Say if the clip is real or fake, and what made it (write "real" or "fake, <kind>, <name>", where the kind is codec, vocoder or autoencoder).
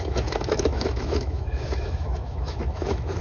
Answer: fake, autoencoder, DAC-VAE